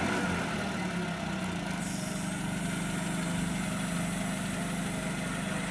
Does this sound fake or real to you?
real